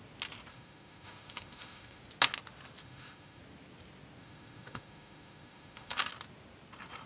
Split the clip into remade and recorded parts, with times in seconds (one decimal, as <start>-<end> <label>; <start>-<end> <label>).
0.0-0.5 recorded; 0.5-2.0 remade; 2.0-2.8 recorded; 2.8-3.4 remade; 3.4-4.2 recorded; 4.2-6.1 remade; 6.1-7.1 recorded